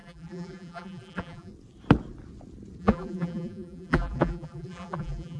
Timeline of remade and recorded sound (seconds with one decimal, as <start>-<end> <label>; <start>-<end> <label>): 0.0-1.5 remade; 1.5-2.8 recorded; 2.8-5.4 remade

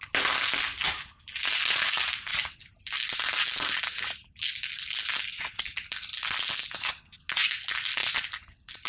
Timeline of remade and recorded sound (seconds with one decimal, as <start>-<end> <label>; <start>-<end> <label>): 0.0-2.3 recorded; 2.3-7.2 remade; 7.2-8.0 recorded; 8.0-8.9 remade

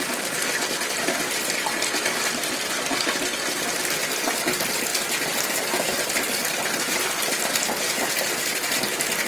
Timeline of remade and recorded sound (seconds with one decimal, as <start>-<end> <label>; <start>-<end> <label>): 0.0-9.3 recorded